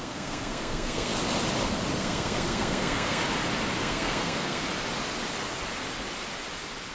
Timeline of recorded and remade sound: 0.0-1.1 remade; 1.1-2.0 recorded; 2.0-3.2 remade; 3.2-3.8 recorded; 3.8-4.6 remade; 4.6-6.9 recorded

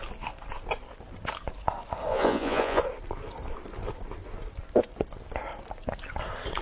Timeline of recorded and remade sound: 0.0-2.1 recorded; 2.1-2.8 remade; 2.8-6.6 recorded

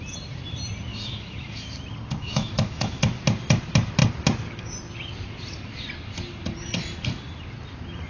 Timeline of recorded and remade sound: 0.0-0.9 recorded; 0.9-1.7 remade; 1.7-2.2 recorded; 2.2-3.0 remade; 3.0-8.1 recorded

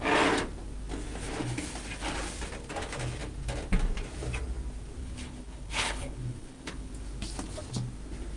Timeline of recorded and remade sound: 0.0-5.0 recorded; 5.0-6.9 remade; 6.9-8.4 recorded

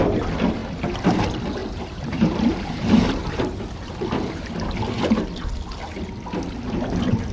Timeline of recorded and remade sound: 0.0-1.6 recorded; 1.6-4.5 remade; 4.5-7.3 recorded